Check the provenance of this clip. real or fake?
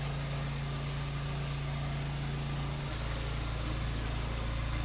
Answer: real